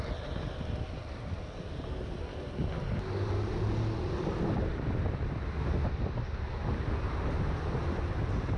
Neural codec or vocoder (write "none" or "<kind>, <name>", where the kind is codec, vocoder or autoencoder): none